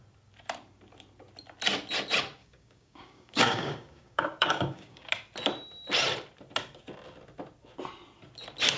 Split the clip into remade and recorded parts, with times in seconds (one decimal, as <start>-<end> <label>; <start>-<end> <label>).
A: 0.0-2.4 recorded; 2.4-5.1 remade; 5.1-8.8 recorded